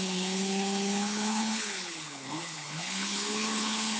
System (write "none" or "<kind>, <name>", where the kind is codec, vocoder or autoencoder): codec, HILCodec